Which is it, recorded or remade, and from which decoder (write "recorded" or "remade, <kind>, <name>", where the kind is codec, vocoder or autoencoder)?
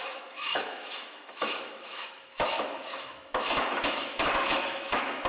remade, autoencoder, DAC-VAE